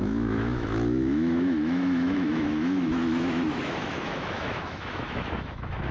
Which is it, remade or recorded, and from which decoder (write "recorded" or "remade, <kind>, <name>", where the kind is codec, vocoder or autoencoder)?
remade, autoencoder, DAC-VAE